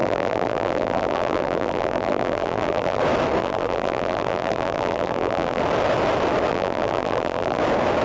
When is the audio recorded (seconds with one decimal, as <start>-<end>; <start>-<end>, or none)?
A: 3.0-3.4; 5.6-6.5; 7.6-8.0